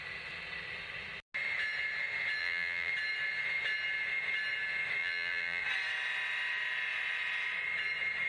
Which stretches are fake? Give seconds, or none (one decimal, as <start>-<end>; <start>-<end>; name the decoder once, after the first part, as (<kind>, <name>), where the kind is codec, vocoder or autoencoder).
2.4-2.9 (vocoder, BigVGAN v2); 5.0-5.6